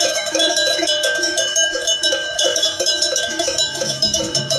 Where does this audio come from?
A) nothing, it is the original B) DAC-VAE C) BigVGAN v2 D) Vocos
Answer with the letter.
B